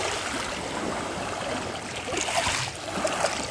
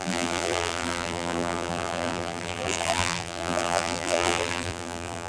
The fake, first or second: second